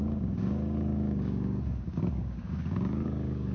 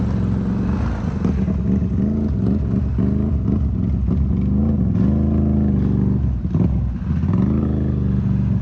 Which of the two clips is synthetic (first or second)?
first